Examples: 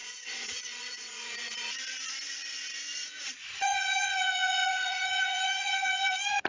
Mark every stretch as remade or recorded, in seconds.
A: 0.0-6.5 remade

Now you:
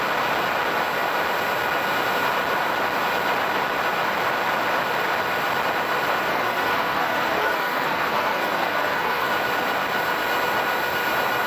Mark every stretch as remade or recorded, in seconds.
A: 0.0-6.3 recorded; 6.3-9.3 remade; 9.3-11.5 recorded

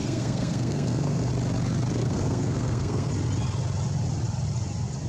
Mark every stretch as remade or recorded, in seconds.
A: 0.0-1.3 remade; 1.3-2.0 recorded; 2.0-3.1 remade; 3.1-5.1 recorded

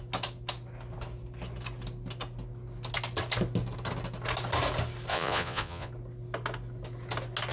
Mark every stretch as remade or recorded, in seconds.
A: 0.0-5.1 recorded; 5.1-5.9 remade; 5.9-7.5 recorded